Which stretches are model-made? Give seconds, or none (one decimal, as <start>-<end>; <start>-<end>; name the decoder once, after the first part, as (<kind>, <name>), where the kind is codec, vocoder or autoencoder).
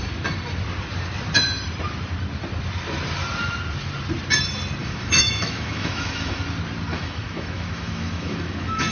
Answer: 4.8-6.4 (autoencoder, DAC-VAE); 6.9-8.9